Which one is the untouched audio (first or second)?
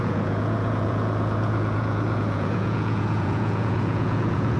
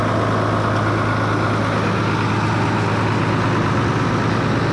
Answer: second